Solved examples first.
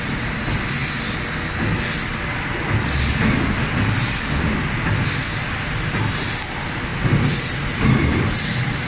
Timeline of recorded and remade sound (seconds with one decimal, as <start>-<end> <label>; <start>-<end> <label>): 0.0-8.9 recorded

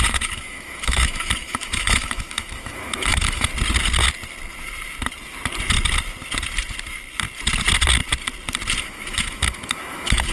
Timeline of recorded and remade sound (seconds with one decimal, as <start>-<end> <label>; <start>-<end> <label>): 0.0-3.5 remade; 3.5-8.8 recorded; 8.8-10.3 remade

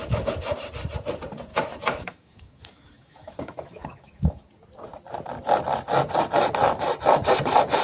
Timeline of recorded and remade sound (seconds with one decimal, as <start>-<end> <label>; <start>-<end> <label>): 0.0-1.5 recorded; 1.5-4.4 remade; 4.4-7.8 recorded

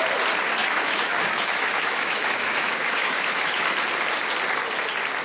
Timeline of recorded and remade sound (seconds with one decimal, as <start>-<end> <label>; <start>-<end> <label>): 0.0-0.6 recorded; 0.6-3.7 remade; 3.7-5.2 recorded